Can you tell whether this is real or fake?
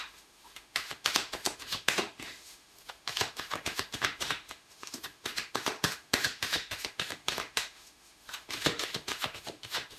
fake